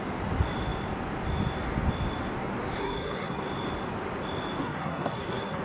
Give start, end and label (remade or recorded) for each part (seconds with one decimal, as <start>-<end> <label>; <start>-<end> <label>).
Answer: 0.0-2.8 recorded; 2.8-3.4 remade; 3.4-4.6 recorded; 4.6-5.6 remade